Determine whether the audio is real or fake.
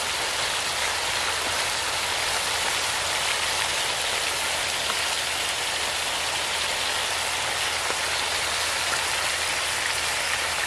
real